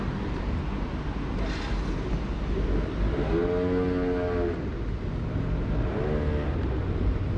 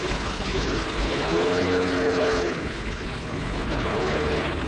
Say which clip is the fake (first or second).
second